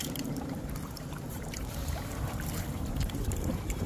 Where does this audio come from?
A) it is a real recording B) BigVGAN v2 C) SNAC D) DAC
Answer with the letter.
B